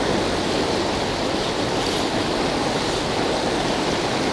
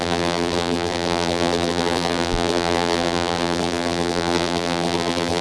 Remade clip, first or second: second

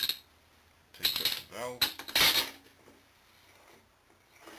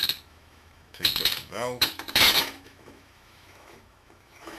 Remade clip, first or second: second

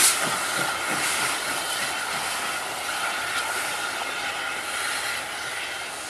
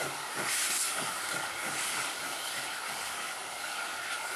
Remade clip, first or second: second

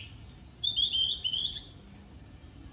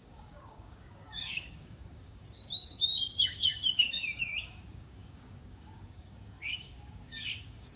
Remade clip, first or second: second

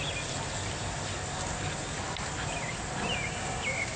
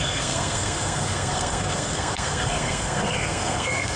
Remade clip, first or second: second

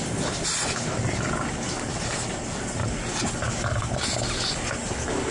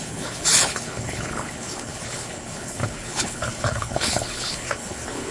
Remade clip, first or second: second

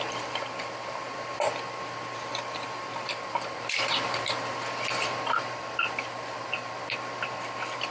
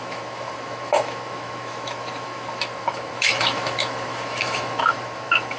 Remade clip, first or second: second